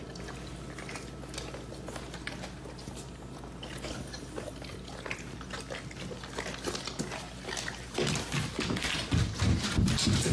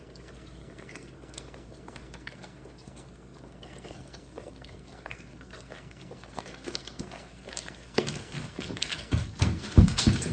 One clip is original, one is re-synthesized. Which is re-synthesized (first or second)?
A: second